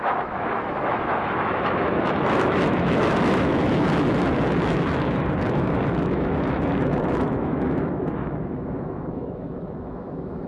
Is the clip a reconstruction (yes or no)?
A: yes